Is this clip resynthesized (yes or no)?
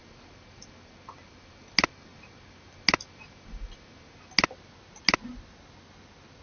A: no